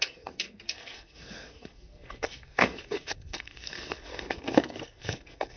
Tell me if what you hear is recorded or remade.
remade